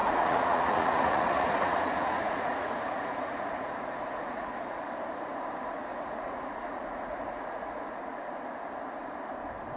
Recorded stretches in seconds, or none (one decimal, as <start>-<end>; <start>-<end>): 4.9-5.9; 8.2-9.8

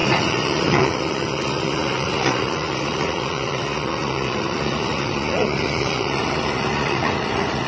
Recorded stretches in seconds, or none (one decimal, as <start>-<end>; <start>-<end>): none

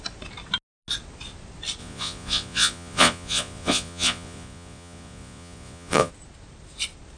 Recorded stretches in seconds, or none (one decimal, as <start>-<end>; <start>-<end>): 0.0-1.8; 6.1-7.2

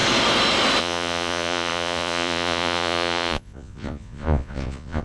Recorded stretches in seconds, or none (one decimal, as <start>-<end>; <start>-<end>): 0.0-0.8